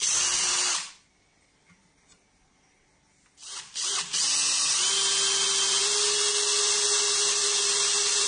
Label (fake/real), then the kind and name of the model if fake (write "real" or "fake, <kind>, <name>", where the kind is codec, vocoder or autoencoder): real